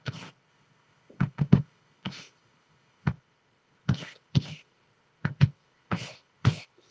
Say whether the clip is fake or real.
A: fake